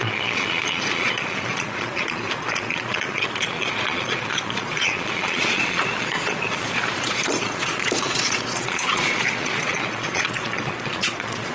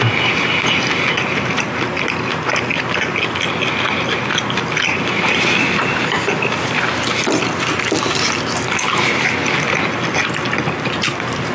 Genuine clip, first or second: second